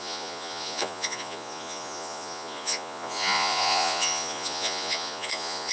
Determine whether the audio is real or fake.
fake